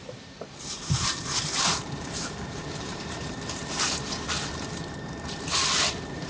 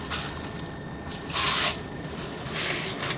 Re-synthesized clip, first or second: first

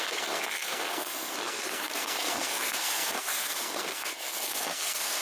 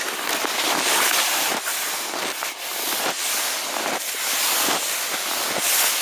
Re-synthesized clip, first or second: first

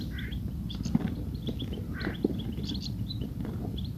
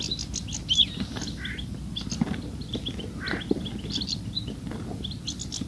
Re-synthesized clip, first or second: first